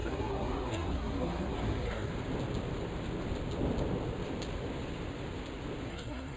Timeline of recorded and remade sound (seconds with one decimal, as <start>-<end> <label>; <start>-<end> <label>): 0.0-2.1 remade; 2.1-5.9 recorded; 5.9-6.4 remade